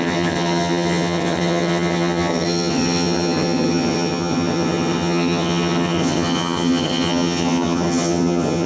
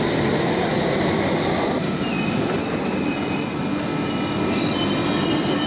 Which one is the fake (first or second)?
first